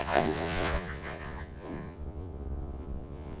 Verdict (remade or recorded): remade